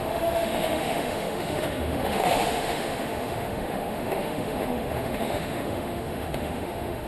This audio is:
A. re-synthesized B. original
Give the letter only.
A